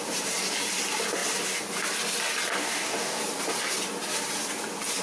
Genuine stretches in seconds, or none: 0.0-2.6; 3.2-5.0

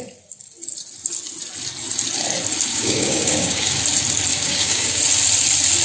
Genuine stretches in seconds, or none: 0.0-2.7; 3.8-4.3; 5.0-5.8

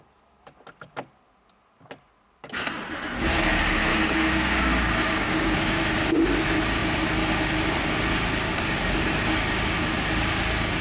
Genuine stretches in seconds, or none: 0.0-3.9; 5.8-10.8

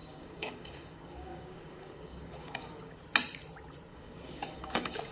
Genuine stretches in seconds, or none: 3.0-3.9

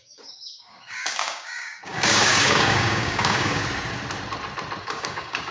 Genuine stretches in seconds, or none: 3.6-4.8

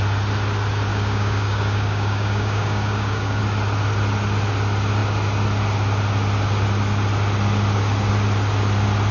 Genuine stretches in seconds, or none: 0.0-0.9; 3.4-9.1

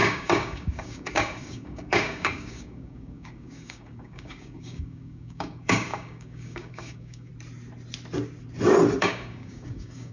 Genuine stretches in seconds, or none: 7.3-9.0